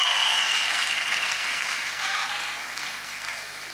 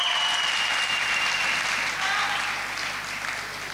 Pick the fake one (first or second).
first